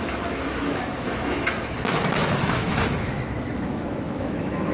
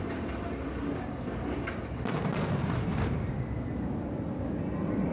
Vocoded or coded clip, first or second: first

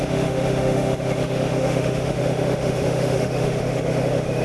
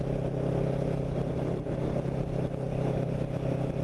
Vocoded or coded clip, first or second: first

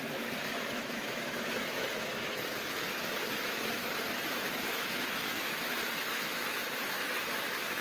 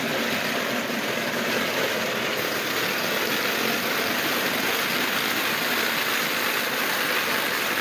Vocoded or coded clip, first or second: first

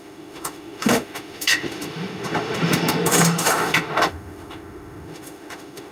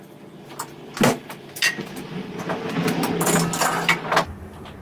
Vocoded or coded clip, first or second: first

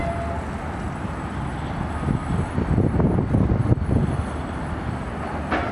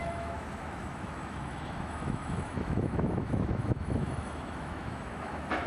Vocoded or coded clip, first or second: second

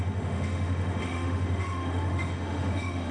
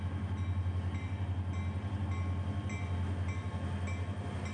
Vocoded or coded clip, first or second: first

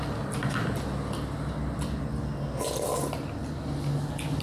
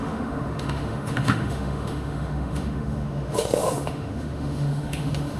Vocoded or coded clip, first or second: second